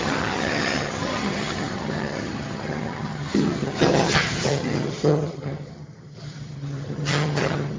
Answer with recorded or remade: remade